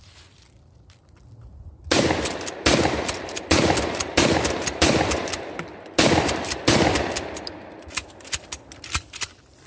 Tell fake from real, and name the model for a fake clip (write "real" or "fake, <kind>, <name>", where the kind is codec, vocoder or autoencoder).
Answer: fake, vocoder, BigVGAN v2